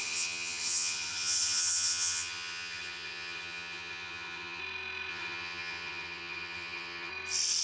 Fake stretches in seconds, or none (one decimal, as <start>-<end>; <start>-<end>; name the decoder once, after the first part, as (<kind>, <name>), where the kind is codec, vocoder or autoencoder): 0.0-4.6 (vocoder, HiFi-GAN); 5.1-7.1